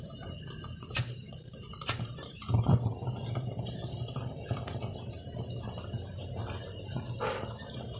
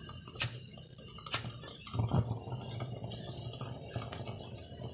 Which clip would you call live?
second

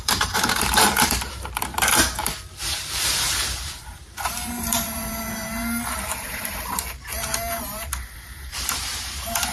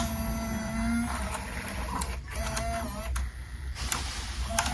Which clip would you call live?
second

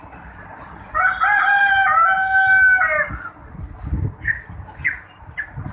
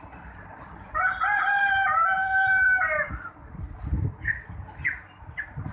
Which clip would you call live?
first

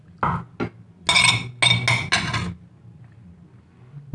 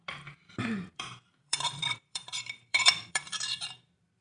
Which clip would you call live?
first